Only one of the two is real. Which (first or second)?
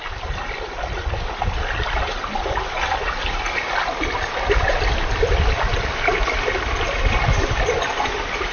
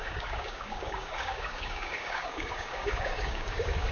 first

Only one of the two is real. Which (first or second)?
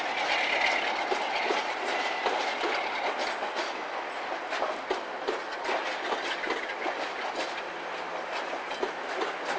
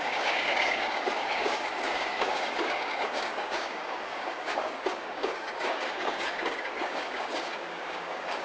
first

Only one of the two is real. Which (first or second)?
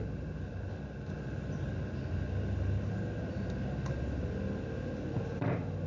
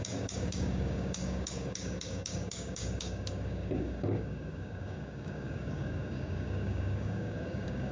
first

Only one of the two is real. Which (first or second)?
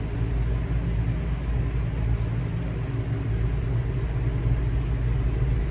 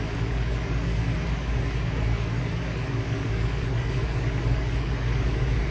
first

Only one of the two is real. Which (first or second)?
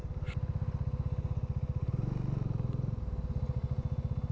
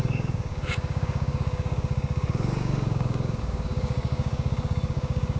first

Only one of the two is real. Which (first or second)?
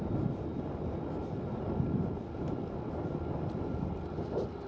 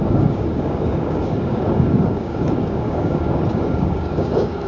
first